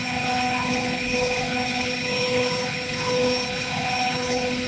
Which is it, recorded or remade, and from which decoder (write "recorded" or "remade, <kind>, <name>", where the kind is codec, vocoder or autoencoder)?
remade, codec, HILCodec